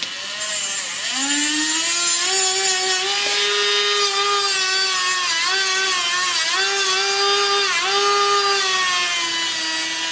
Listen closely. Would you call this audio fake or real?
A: real